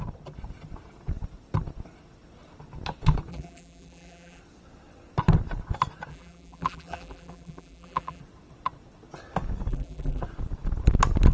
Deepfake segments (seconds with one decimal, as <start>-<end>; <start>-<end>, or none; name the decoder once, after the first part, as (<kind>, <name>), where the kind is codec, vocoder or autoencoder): 3.3-4.4 (vocoder, BigVGAN v2); 6.1-8.2; 9.7-10.2